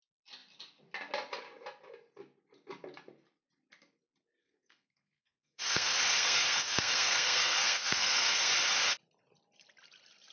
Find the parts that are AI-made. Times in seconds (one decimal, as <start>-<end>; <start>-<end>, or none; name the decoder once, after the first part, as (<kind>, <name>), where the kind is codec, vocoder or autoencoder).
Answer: 4.4-8.5 (codec, SNAC)